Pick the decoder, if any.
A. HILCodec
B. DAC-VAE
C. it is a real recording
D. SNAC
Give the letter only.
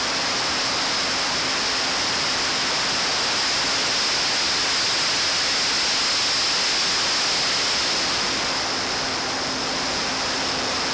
C